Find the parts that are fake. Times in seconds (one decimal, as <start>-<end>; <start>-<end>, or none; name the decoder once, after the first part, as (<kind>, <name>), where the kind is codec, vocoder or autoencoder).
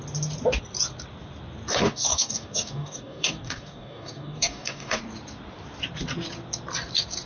1.7-5.0 (codec, DAC)